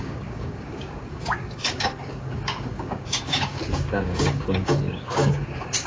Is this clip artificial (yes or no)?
yes